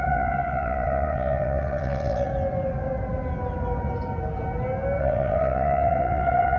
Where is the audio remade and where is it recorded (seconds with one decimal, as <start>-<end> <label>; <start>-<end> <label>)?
0.0-2.3 remade; 2.3-5.0 recorded; 5.0-6.6 remade